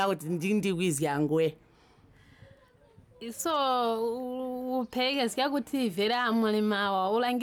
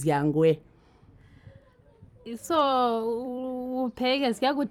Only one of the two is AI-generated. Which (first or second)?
second